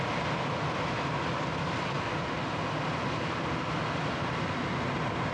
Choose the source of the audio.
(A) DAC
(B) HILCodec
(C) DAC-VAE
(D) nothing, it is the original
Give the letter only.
D